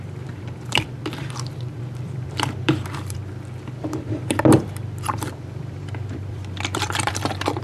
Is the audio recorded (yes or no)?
no